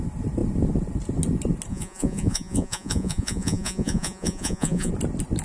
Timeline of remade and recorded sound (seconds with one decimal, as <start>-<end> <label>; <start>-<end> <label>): 0.0-1.7 recorded; 1.7-4.9 remade; 4.9-5.4 recorded